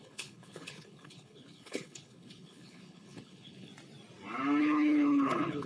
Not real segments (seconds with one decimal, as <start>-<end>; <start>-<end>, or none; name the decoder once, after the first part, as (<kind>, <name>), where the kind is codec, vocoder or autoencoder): 0.0-3.7 (codec, HILCodec); 4.6-5.7